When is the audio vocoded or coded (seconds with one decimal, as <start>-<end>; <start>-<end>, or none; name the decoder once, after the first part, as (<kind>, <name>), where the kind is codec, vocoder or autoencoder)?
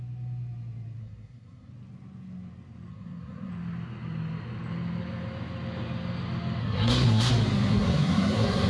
1.0-1.7 (codec, SNAC); 2.9-3.5; 6.6-7.3; 7.7-8.7